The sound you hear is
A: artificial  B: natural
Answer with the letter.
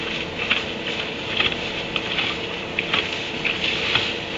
B